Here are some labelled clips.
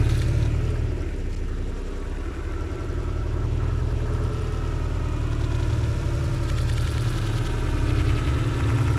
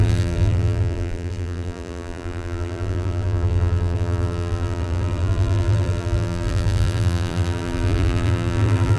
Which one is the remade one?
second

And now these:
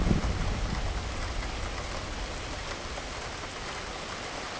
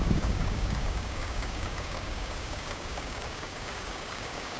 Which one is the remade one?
second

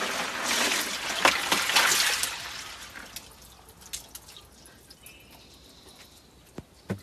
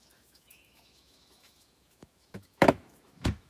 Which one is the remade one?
second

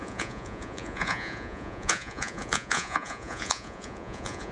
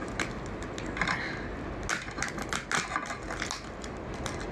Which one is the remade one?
first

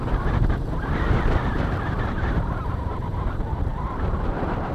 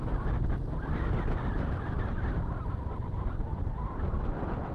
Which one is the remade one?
first